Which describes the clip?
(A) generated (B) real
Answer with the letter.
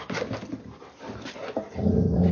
B